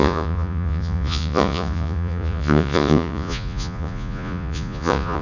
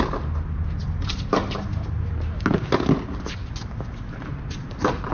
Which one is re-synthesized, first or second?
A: first